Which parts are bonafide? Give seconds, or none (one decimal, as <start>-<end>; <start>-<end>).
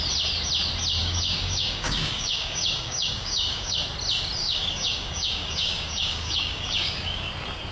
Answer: 0.0-1.0; 3.8-4.4; 7.3-7.7